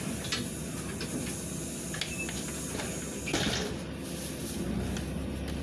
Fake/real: real